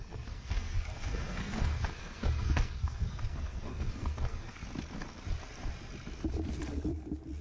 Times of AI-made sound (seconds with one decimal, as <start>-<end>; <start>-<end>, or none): 0.0-4.6